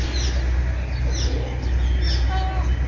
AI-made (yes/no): no